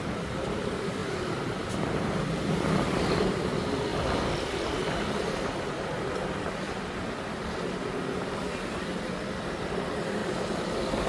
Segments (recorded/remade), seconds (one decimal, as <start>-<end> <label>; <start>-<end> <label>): 0.0-1.0 recorded; 1.0-2.5 remade; 2.5-3.9 recorded; 3.9-5.3 remade; 5.3-10.2 recorded; 10.2-11.1 remade